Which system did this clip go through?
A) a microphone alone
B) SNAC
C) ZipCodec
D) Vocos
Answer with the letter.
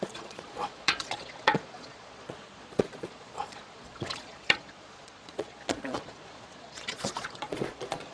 D